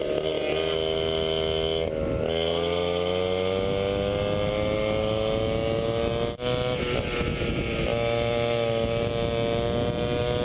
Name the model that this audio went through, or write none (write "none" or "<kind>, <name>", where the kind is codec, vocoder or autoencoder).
none